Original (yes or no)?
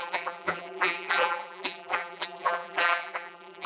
no